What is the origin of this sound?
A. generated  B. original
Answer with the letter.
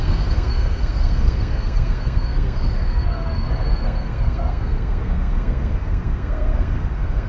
A